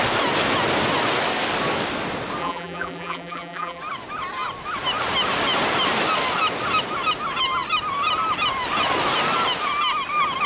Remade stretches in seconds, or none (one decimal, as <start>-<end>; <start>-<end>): 2.4-3.8